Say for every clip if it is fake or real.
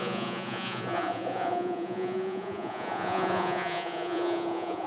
fake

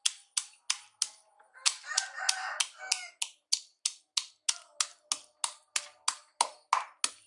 real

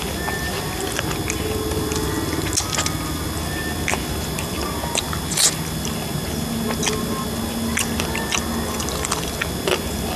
real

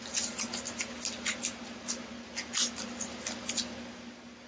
real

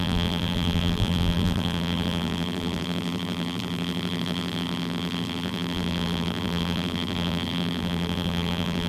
fake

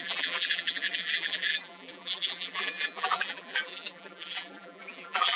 fake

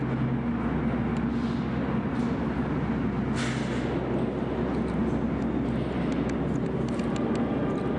real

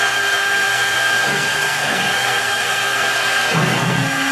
fake